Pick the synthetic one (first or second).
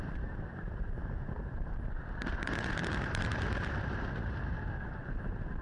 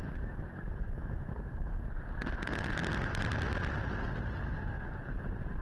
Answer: first